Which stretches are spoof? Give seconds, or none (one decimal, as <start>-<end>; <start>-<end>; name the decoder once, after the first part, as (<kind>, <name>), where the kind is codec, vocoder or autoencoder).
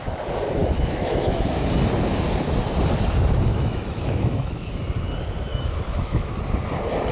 0.6-1.7 (autoencoder, DAC-VAE); 3.5-4.7; 5.5-6.3